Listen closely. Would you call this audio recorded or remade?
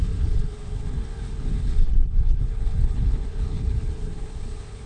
remade